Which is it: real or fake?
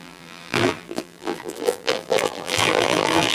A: fake